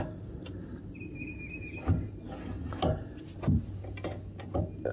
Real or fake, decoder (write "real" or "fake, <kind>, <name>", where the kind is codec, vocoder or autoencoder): real